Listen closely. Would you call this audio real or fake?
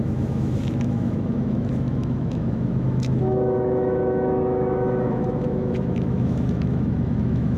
fake